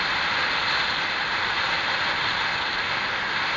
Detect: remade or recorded recorded